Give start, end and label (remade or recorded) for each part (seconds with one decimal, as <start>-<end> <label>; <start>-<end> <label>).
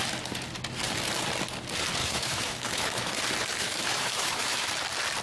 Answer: 0.0-2.0 recorded; 2.0-3.2 remade; 3.2-3.6 recorded; 3.6-4.7 remade; 4.7-5.2 recorded